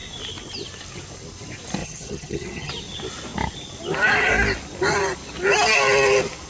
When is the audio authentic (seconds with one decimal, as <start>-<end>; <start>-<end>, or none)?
0.0-1.8; 2.7-6.5